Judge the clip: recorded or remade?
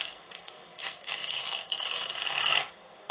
remade